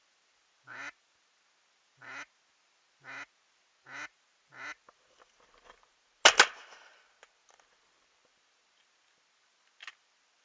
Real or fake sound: real